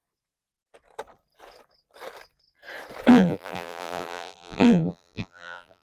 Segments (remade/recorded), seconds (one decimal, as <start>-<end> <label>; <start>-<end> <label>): 0.0-3.1 recorded; 3.1-5.8 remade